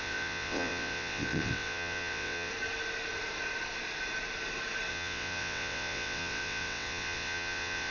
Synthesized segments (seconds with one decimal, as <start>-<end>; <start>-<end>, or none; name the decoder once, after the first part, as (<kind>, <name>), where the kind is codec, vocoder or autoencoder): 0.0-2.5 (vocoder, WaveNeXt); 4.9-7.9